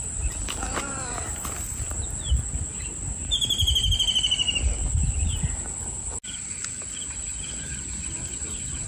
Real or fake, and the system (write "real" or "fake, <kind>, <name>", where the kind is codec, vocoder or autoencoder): real